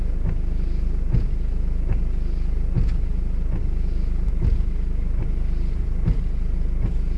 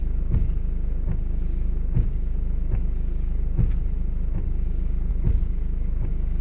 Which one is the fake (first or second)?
first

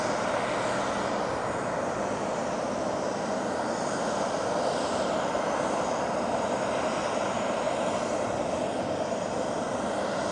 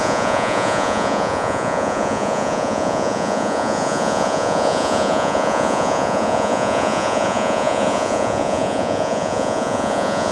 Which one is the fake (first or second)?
second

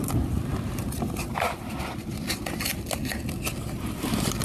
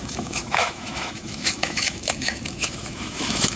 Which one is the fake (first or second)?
second